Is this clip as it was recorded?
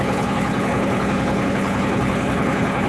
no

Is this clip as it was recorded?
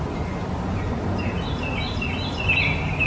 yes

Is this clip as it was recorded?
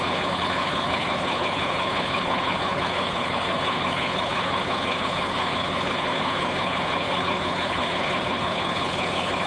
no